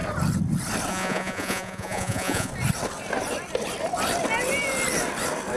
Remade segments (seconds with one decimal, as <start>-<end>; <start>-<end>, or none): 0.9-2.5